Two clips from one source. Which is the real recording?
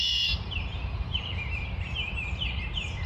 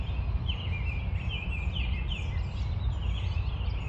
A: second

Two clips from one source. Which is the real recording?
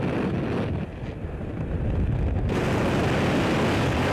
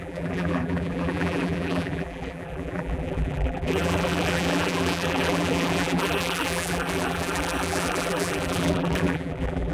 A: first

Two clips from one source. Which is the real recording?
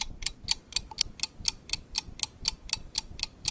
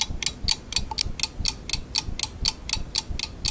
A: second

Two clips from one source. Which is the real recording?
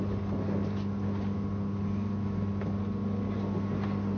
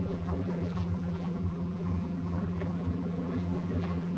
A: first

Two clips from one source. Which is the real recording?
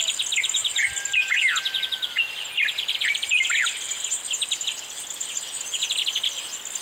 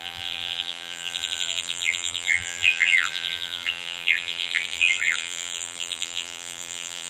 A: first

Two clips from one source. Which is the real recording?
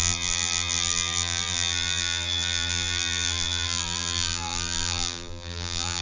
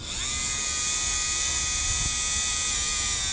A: second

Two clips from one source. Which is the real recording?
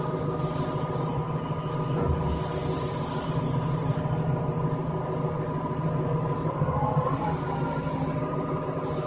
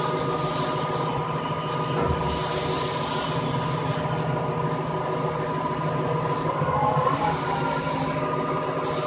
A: second